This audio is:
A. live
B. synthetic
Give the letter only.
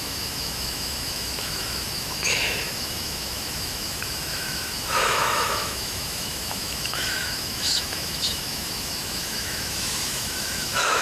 B